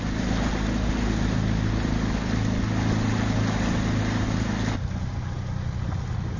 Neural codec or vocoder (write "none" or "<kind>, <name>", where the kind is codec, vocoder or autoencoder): none